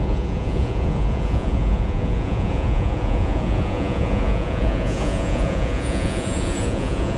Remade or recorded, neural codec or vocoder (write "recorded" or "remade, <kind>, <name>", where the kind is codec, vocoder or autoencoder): remade, vocoder, Vocos